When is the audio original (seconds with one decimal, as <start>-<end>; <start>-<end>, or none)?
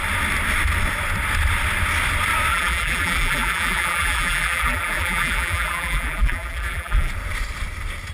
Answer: 0.0-2.5; 7.1-8.1